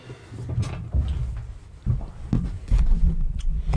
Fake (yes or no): no